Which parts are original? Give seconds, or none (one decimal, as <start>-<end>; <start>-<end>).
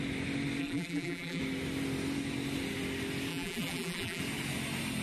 0.0-0.6; 1.4-3.3; 4.2-5.0